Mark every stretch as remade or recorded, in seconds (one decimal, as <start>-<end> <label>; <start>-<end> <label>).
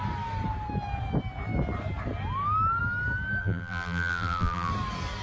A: 0.0-3.4 recorded; 3.4-4.7 remade; 4.7-5.2 recorded